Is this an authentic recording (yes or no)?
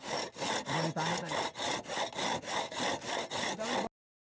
yes